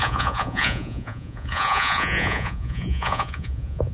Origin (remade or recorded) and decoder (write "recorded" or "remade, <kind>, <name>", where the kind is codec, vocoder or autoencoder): remade, vocoder, Vocos